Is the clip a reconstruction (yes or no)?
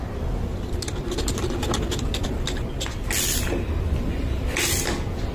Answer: no